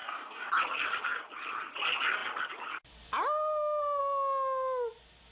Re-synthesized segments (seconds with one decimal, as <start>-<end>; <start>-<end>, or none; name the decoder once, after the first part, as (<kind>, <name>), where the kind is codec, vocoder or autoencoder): 0.0-0.5 (codec, DAC)